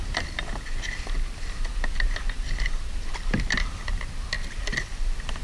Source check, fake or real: real